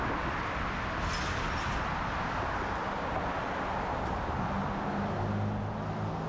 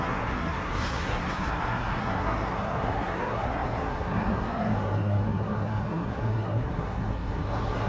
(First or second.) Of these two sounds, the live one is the first